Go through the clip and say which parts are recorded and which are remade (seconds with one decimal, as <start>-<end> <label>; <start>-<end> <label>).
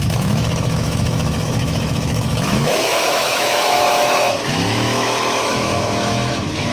0.0-6.7 remade